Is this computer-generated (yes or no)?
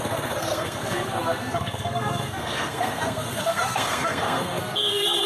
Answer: yes